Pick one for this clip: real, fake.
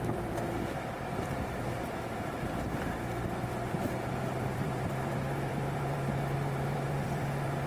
fake